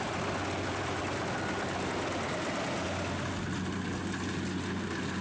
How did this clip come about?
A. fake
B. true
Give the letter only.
B